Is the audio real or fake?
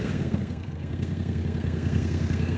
fake